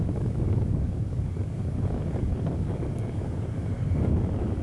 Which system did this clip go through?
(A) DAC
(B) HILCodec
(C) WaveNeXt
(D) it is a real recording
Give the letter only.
A